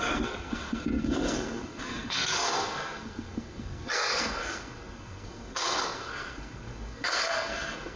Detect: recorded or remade remade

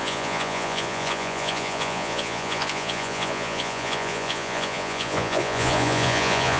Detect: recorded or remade remade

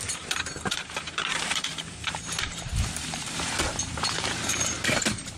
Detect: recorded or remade remade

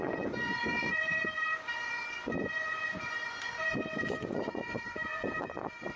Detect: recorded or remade remade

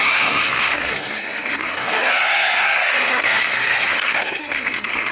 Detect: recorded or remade remade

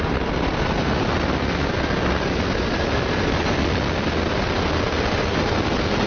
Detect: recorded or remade recorded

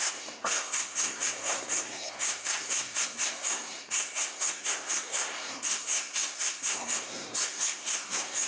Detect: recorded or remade remade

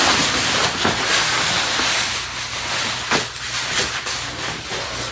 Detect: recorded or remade recorded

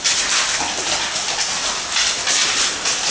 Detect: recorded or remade recorded